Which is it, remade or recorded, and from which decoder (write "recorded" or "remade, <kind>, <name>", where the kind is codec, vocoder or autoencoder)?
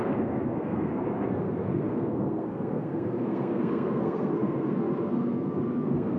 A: remade, codec, SNAC